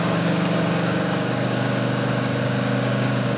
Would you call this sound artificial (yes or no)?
yes